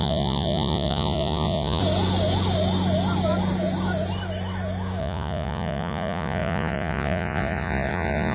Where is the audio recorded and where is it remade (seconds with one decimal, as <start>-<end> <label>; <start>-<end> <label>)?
0.0-1.8 remade; 1.8-5.0 recorded; 5.0-8.3 remade